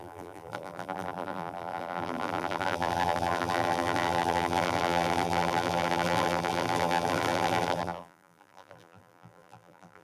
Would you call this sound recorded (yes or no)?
no